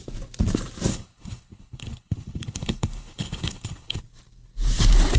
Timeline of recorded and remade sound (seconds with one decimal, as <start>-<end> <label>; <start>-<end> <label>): 0.0-0.9 recorded; 0.9-4.0 remade; 4.0-5.2 recorded